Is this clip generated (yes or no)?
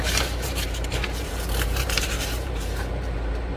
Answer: yes